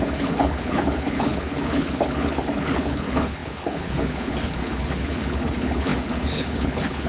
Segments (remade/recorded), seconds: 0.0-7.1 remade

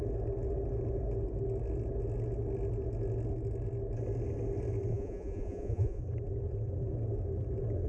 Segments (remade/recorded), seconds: 0.0-4.9 recorded; 4.9-6.0 remade; 6.0-7.9 recorded

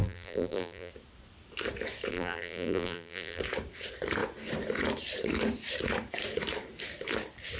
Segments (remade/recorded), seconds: 0.0-0.9 remade; 0.9-2.1 recorded; 2.1-3.4 remade; 3.4-7.6 recorded

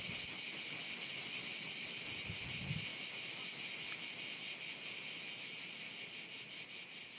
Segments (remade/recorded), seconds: 0.0-7.2 recorded

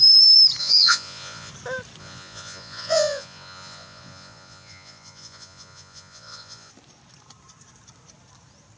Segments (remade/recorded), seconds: 0.0-0.6 recorded; 0.6-1.5 remade; 1.5-2.0 recorded; 2.0-6.7 remade; 6.7-8.8 recorded

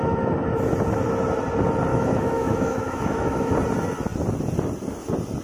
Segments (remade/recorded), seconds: 0.0-1.9 recorded; 1.9-3.5 remade; 3.5-5.4 recorded

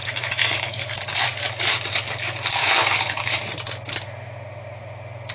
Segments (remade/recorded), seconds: 0.0-1.0 remade; 1.0-2.6 recorded; 2.6-3.4 remade; 3.4-5.3 recorded